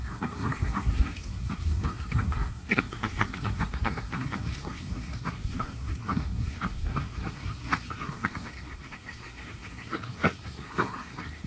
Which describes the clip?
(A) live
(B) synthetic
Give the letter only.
B